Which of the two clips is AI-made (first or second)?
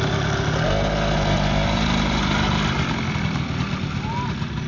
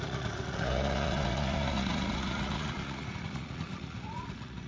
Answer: second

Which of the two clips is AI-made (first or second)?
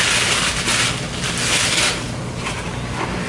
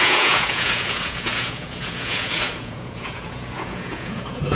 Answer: second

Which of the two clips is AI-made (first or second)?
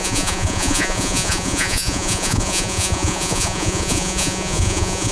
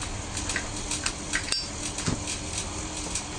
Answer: first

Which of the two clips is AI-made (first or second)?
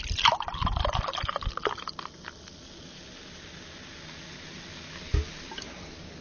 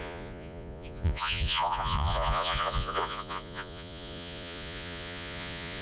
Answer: second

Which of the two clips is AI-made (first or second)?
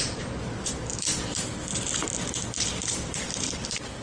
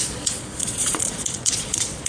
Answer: second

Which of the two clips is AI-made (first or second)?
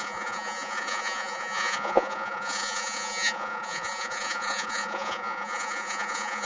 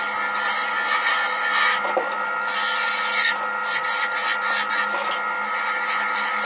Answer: first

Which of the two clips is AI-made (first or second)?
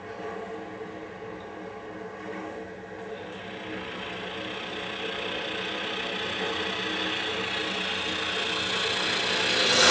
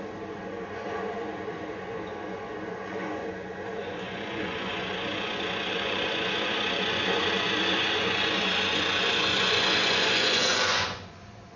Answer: second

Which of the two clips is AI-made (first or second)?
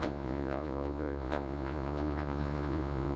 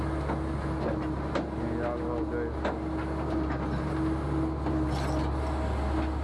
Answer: first